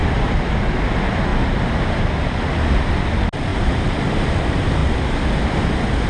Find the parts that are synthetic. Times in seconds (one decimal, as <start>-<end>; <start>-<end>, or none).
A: 0.0-0.5; 1.3-2.9; 3.5-4.0; 4.8-5.4